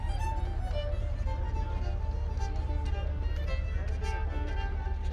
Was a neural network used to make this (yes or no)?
no